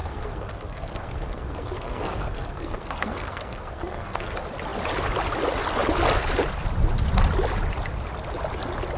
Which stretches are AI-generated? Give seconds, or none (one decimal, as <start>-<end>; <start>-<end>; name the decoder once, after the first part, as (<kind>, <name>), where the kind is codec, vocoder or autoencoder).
0.0-4.3 (codec, SNAC)